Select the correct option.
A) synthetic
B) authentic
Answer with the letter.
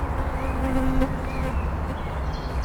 B